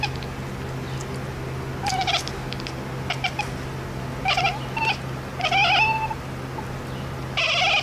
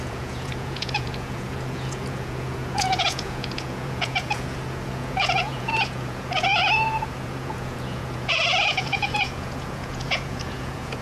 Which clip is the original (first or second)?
first